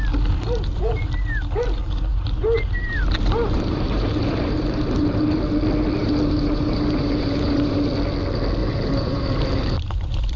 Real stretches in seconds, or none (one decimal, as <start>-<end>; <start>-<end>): 0.0-2.1; 5.4-6.0; 7.8-8.6